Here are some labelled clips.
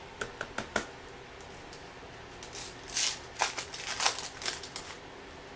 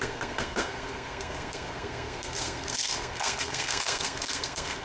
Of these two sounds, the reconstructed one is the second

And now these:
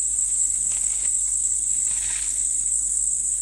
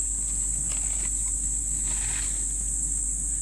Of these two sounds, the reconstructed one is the first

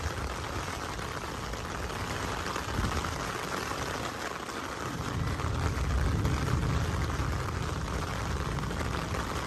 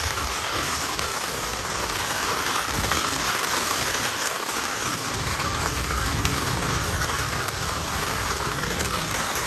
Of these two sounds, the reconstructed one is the second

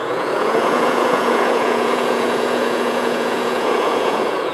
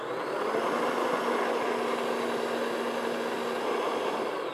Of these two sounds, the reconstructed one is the first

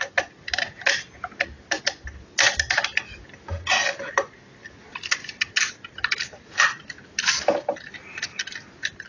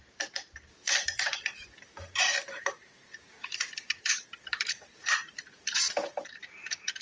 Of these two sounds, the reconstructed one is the second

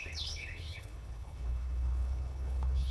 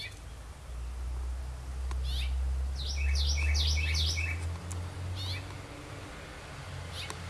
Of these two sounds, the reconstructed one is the first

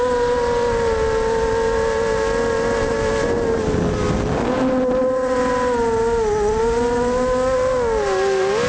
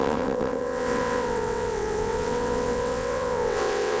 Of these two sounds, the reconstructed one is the second